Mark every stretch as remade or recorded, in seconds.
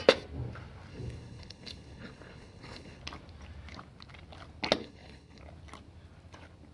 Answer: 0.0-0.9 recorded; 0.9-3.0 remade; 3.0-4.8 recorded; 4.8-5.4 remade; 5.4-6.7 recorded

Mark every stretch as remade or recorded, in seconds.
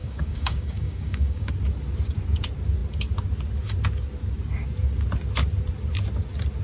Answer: 0.0-1.5 remade; 1.5-6.6 recorded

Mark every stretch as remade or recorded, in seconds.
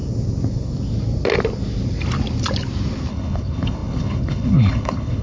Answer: 0.0-3.1 recorded; 3.1-5.2 remade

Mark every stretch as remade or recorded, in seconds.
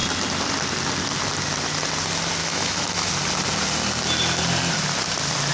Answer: 0.0-2.4 recorded; 2.4-3.1 remade; 3.1-5.5 recorded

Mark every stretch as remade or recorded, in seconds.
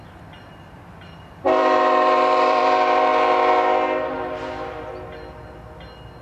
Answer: 0.0-3.1 remade; 3.1-6.2 recorded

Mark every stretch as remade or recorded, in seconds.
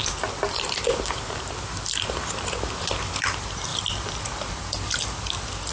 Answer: 0.0-5.7 recorded